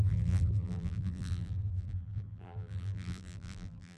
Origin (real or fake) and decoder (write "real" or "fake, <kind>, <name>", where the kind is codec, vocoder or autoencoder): fake, vocoder, BigVGAN v2